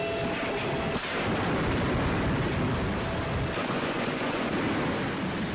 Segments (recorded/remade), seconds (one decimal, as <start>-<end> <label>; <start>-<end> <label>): 0.0-3.6 recorded; 3.6-4.5 remade; 4.5-5.5 recorded